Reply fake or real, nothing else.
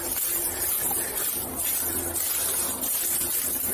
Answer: real